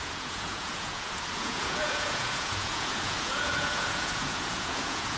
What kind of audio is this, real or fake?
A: fake